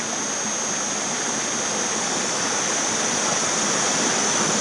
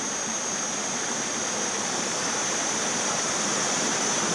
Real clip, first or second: first